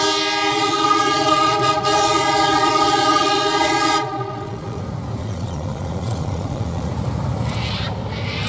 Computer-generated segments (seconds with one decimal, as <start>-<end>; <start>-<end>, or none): 0.5-4.8; 5.2-6.9